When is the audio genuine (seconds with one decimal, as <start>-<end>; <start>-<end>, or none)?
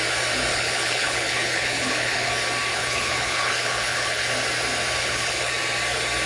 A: 0.0-0.5; 2.3-2.7; 4.3-5.0; 5.5-6.3